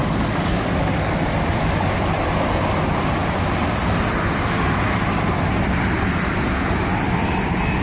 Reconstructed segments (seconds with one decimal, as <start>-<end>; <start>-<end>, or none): 0.0-1.1